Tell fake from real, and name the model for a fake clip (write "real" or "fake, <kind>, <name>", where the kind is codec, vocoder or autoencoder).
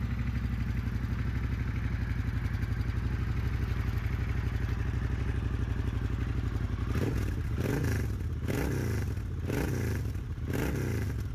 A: real